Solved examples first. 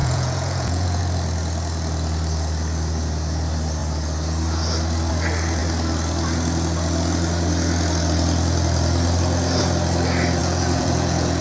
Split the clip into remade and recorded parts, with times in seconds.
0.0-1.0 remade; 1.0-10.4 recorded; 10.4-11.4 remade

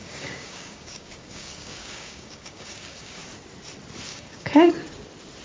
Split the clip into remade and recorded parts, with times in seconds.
0.0-3.2 remade; 3.2-4.1 recorded; 4.1-4.7 remade; 4.7-5.4 recorded

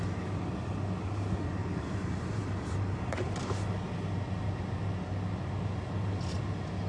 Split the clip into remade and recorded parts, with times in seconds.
0.0-1.6 recorded; 1.6-3.4 remade; 3.4-6.9 recorded

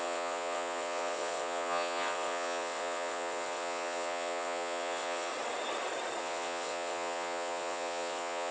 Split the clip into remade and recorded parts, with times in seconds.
0.0-5.3 remade; 5.3-6.2 recorded; 6.2-8.5 remade

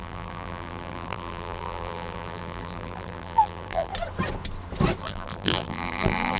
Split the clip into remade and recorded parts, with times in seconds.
0.0-3.9 remade; 3.9-5.0 recorded; 5.0-6.4 remade

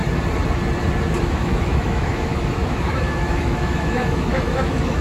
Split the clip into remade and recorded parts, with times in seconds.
0.0-1.2 recorded; 1.2-5.0 remade

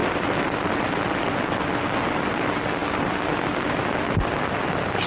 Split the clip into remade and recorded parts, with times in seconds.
0.0-5.1 recorded

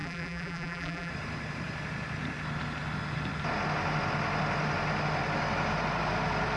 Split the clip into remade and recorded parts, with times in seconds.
0.0-1.1 remade; 1.1-6.6 recorded